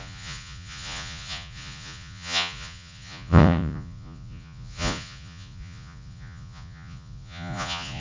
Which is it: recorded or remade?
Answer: remade